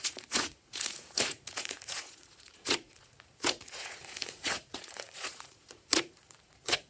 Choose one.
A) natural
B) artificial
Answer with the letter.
B